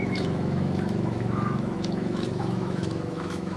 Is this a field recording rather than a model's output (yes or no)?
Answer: no